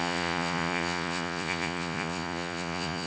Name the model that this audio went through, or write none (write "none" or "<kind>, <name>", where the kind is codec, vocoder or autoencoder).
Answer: vocoder, Vocos